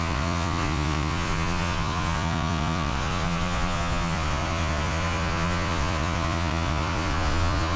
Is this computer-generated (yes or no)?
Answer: yes